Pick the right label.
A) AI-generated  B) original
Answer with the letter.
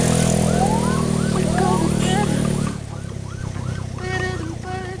B